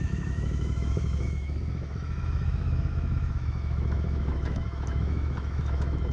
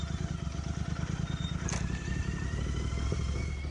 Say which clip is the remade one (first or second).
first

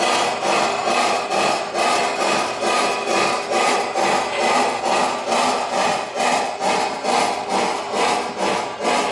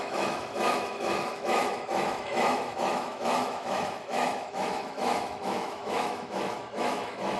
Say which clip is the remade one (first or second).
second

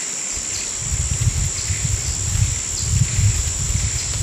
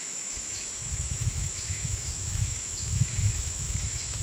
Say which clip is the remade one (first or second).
second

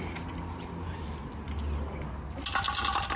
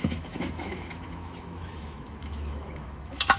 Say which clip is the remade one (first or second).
second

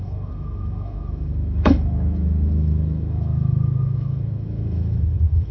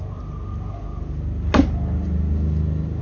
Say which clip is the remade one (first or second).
first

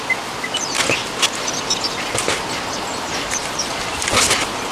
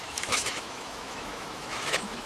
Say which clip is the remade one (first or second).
second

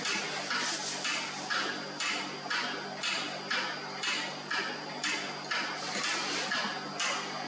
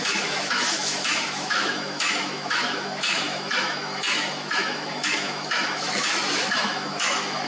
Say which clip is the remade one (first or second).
second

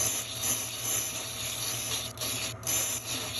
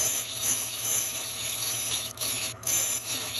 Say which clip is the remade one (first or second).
second